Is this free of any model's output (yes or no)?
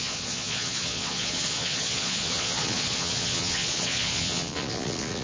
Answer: no